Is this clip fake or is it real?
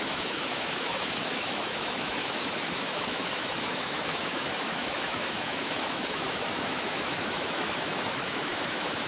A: fake